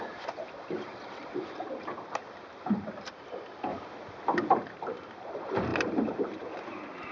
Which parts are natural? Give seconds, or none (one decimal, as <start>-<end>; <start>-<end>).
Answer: 3.7-4.5